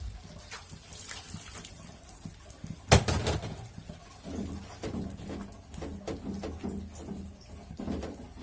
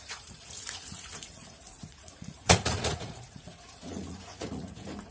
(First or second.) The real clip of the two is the first